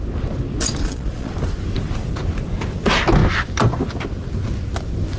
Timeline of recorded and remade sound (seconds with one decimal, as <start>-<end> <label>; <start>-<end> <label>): 0.0-0.8 recorded; 0.8-1.3 remade; 1.3-5.2 recorded